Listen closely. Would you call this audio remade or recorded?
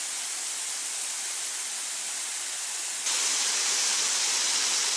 recorded